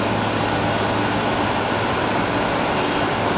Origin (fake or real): real